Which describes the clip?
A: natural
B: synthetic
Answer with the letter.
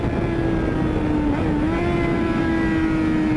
A